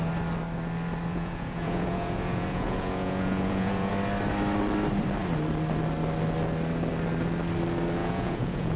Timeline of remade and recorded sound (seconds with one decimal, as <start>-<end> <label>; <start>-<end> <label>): 0.0-1.1 recorded; 1.1-3.9 remade; 3.9-8.0 recorded; 8.0-8.8 remade